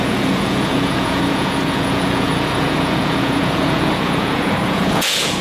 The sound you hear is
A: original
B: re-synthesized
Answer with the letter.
B